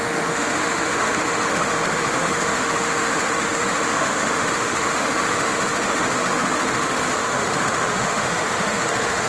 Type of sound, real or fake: fake